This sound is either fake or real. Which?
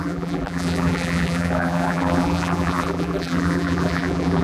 fake